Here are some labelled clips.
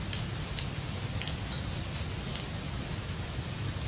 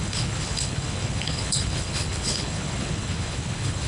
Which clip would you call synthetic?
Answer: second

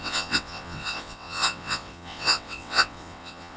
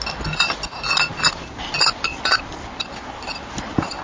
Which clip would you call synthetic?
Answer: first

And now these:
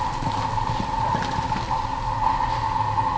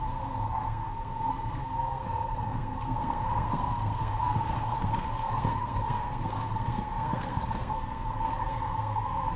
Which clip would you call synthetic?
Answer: second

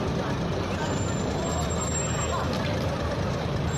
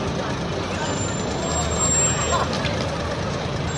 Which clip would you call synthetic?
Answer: first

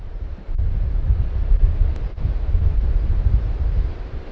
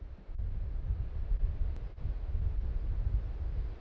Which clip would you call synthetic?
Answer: first